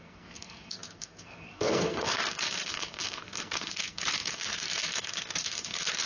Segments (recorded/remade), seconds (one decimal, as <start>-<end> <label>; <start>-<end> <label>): 0.0-6.1 remade